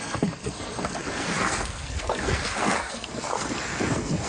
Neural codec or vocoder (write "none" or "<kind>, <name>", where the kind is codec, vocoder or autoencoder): codec, SNAC